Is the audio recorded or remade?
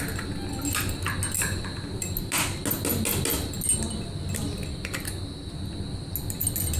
recorded